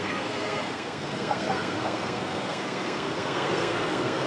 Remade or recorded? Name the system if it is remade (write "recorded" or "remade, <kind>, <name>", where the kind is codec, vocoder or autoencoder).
remade, codec, SNAC